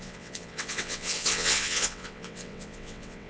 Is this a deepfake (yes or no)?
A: yes